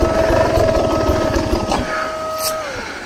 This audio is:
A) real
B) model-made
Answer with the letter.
A